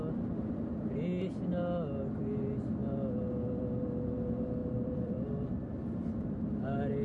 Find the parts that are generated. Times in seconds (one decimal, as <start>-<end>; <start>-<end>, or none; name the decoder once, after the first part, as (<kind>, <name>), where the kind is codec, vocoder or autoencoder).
4.6-6.6 (vocoder, BigVGAN v2)